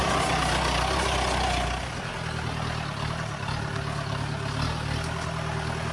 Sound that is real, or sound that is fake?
real